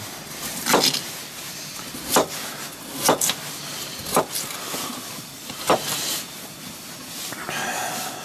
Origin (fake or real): real